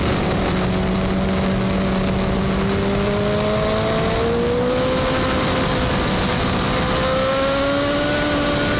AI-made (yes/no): no